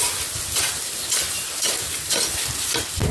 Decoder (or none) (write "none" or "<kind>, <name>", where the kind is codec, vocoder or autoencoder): none